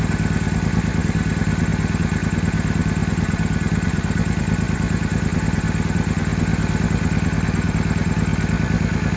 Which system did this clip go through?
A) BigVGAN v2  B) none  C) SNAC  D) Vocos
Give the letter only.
B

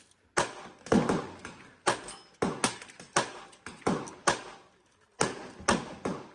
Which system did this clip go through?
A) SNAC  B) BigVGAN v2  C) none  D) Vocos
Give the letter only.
C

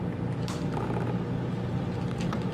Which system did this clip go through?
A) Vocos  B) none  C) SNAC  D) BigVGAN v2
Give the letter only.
B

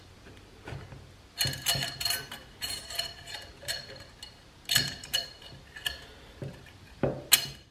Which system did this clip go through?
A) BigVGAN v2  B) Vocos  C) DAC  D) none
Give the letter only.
D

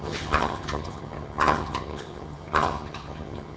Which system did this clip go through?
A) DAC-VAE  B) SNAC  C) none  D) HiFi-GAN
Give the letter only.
D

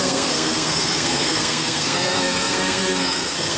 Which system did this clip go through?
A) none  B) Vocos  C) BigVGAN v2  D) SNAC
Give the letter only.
D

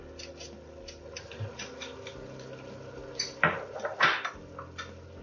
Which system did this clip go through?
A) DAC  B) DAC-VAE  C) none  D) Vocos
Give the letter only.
C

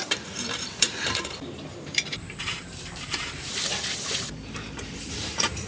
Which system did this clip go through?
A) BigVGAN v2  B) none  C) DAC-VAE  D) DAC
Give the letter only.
A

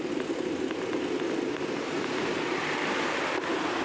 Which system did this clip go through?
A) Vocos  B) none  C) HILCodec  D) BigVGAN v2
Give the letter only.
B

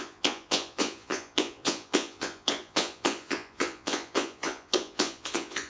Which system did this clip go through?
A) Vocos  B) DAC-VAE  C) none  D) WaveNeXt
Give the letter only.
A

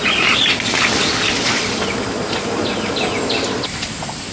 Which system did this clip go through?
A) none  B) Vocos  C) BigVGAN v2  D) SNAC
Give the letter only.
A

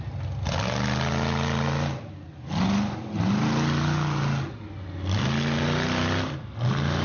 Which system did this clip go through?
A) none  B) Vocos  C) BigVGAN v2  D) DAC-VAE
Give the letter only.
A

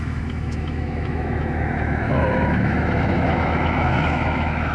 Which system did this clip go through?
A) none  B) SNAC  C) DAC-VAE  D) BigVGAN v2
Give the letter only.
C